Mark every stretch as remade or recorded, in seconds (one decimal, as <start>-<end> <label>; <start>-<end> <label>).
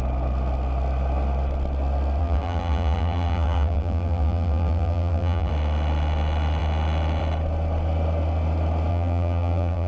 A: 0.0-2.2 recorded; 2.2-5.5 remade; 5.5-8.9 recorded; 8.9-9.9 remade